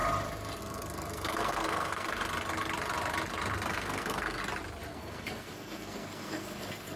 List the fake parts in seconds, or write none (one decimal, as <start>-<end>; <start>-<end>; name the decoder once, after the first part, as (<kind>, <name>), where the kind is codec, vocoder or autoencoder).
0.6-2.2 (codec, SNAC); 3.7-4.4; 4.9-7.0